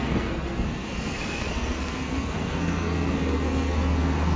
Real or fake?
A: fake